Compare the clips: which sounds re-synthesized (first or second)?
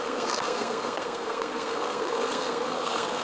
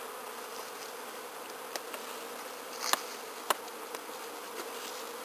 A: first